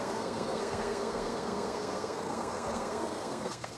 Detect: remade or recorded remade